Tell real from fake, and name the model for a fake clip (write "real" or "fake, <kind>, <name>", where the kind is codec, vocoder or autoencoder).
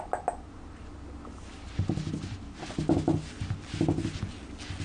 real